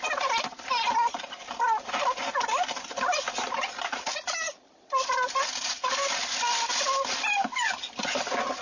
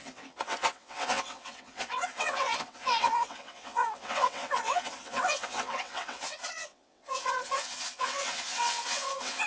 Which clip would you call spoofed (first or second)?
second